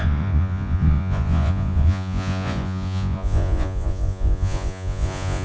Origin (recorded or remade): remade